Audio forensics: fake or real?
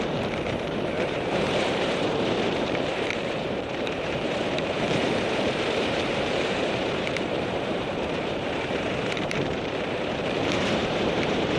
fake